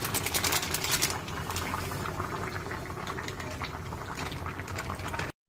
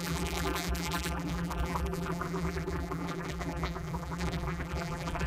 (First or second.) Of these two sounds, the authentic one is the first